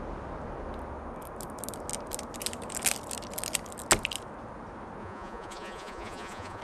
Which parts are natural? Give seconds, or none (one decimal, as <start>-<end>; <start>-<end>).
0.0-5.0